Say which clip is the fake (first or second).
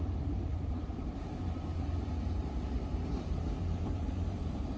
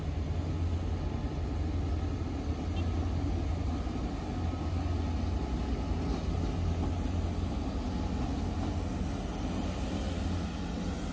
first